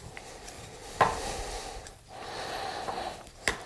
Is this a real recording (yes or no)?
yes